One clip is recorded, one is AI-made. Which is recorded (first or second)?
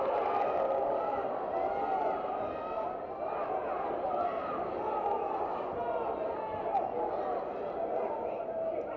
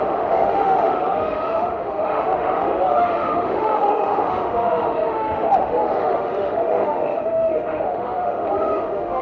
first